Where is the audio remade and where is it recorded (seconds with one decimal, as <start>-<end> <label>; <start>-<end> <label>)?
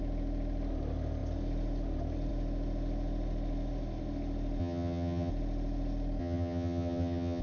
0.0-4.6 recorded; 4.6-5.3 remade; 5.3-6.2 recorded; 6.2-7.4 remade